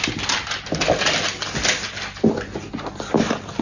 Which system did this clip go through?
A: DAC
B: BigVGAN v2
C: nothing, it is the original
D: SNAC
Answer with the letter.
C